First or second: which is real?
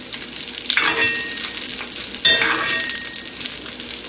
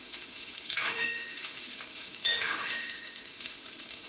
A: first